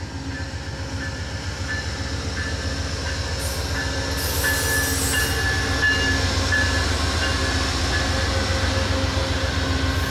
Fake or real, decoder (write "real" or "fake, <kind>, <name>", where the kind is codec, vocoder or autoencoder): real